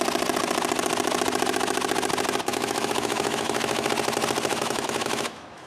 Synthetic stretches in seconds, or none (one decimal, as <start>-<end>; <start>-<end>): 2.5-3.9; 4.5-5.7